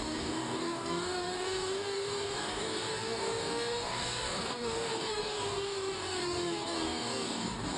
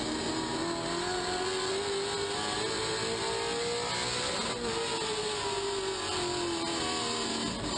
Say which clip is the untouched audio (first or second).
second